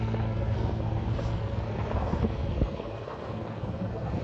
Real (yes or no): no